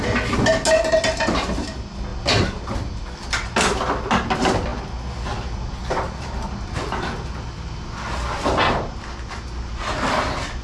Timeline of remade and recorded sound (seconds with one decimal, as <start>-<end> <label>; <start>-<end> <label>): 0.0-10.6 recorded